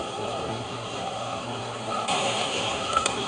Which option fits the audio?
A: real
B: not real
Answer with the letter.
B